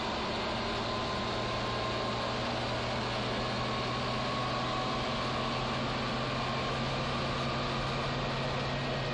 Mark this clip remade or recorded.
recorded